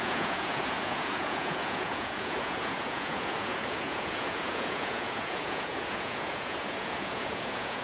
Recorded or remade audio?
remade